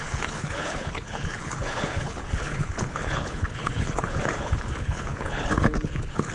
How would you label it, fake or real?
fake